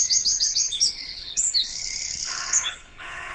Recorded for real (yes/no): no